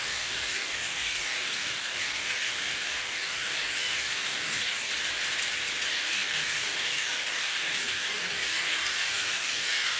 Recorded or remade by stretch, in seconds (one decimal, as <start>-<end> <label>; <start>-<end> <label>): 0.0-4.9 remade; 4.9-5.9 recorded; 5.9-10.0 remade